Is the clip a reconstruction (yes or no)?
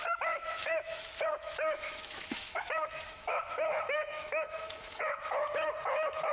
yes